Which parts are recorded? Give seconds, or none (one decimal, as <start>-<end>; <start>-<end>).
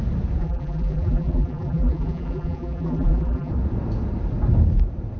0.0-0.4; 3.5-5.2